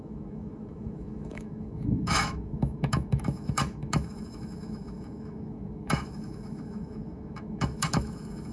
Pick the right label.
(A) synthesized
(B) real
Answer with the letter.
A